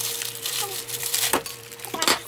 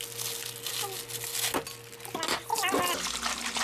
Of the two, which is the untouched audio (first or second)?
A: second